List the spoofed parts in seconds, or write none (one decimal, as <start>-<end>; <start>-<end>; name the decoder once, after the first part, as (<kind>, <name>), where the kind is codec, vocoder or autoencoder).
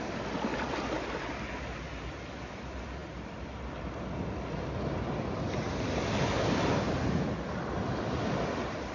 none